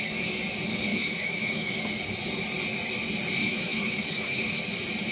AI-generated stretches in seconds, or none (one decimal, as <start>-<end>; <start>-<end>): 0.9-1.7; 3.4-4.6